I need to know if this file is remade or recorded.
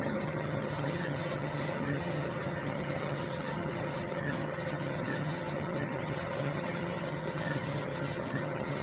remade